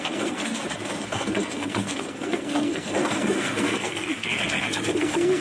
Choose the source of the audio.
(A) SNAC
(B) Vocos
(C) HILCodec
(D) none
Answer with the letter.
A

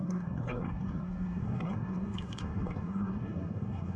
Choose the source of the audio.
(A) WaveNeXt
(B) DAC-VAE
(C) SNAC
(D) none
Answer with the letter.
C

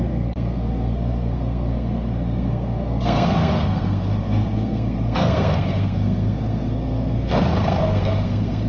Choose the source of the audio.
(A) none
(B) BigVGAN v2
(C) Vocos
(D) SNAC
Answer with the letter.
D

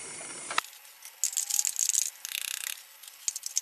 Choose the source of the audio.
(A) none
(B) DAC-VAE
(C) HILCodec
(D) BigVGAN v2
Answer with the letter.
A